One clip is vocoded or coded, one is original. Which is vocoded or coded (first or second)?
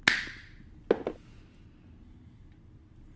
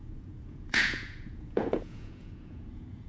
second